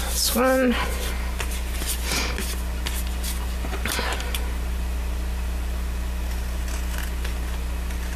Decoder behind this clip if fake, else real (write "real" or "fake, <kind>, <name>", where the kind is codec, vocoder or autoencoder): real